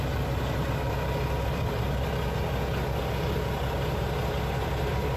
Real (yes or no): yes